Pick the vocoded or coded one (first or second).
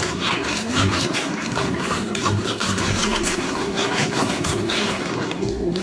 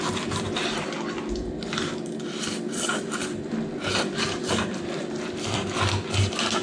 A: first